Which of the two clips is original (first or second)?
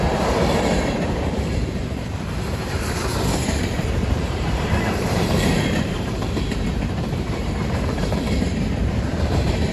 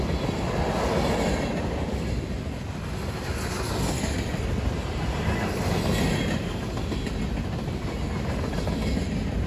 second